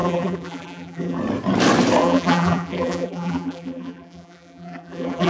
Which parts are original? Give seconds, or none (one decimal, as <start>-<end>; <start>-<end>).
1.2-2.0